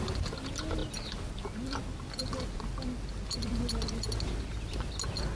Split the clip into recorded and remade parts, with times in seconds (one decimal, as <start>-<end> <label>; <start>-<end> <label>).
0.0-5.4 recorded